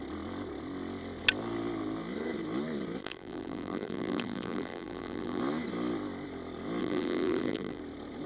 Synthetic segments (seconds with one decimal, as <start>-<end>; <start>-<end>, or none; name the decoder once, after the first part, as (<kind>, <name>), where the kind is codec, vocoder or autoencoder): 3.0-5.4 (vocoder, BigVGAN v2); 6.8-7.8